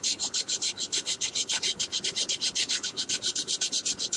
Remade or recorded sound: remade